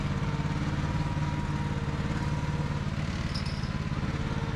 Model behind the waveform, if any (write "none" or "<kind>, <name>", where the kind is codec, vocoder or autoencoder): none